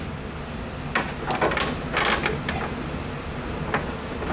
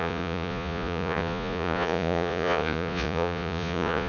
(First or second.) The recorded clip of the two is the first